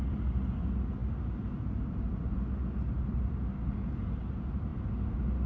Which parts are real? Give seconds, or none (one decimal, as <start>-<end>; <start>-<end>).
0.0-5.5